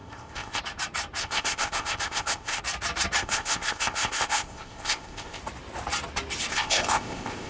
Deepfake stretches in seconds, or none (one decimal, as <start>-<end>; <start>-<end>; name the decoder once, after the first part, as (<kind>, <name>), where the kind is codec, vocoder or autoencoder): 0.0-0.6 (codec, ZipCodec); 1.2-2.6; 3.2-5.4; 6.5-7.5